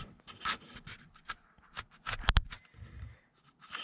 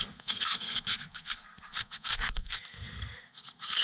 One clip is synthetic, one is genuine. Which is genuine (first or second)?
first